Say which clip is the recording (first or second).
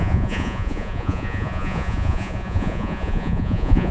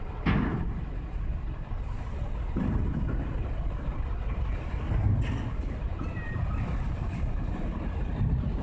second